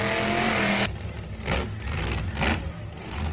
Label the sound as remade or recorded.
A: recorded